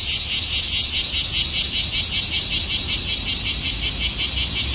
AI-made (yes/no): no